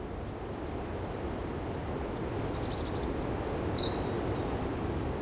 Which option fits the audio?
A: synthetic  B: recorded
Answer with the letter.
B